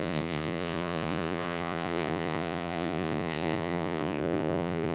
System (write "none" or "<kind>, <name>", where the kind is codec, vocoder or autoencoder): vocoder, Vocos